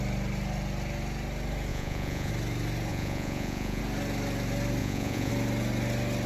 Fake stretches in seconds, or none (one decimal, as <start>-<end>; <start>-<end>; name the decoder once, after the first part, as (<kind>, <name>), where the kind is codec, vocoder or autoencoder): 1.7-2.3 (vocoder, Vocos); 2.9-3.8; 4.8-5.3